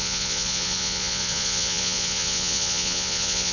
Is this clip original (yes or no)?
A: no